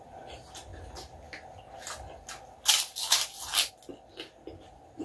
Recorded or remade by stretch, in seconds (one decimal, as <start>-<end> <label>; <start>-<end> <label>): 0.0-5.0 recorded